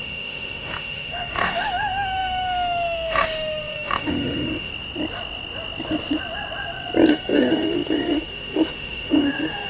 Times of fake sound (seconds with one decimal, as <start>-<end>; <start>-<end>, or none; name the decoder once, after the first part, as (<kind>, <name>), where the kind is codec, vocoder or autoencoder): 0.0-4.7 (autoencoder, DAC-VAE); 7.1-9.7